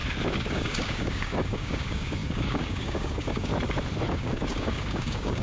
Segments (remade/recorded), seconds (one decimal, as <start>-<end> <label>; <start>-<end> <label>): 0.0-0.5 recorded; 0.5-3.5 remade; 3.5-4.1 recorded; 4.1-5.4 remade